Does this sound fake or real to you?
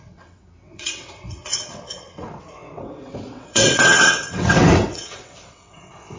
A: fake